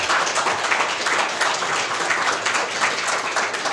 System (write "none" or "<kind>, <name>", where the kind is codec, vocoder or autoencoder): none